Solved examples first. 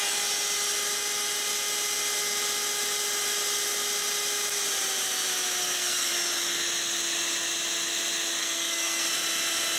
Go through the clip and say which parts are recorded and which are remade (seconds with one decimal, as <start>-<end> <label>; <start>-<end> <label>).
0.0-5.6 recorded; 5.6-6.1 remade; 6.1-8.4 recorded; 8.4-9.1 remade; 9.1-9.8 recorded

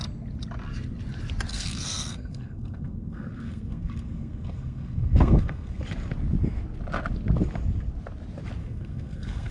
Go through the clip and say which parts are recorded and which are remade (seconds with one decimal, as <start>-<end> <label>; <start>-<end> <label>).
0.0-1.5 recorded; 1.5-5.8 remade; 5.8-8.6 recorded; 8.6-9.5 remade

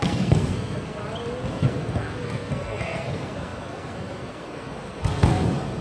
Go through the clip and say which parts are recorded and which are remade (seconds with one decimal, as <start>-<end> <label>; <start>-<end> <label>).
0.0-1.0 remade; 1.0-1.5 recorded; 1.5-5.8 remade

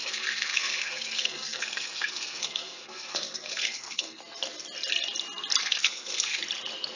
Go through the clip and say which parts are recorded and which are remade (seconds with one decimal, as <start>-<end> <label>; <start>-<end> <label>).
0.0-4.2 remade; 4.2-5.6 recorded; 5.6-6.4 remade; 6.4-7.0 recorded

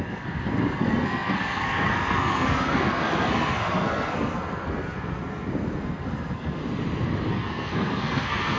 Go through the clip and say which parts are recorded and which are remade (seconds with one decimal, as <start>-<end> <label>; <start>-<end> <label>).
0.0-6.6 remade; 6.6-7.3 recorded; 7.3-8.6 remade

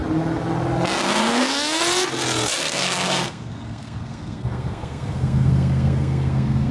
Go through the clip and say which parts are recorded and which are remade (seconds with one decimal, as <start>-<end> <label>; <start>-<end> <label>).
0.0-1.0 recorded; 1.0-1.8 remade; 1.8-2.6 recorded; 2.6-6.7 remade

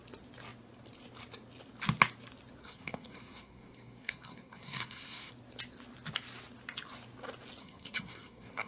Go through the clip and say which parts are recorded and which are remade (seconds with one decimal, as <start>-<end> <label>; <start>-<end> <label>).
0.0-2.6 recorded; 2.6-5.3 remade; 5.3-7.6 recorded; 7.6-8.7 remade